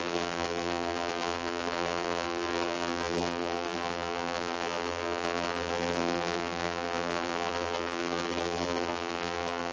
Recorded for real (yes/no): no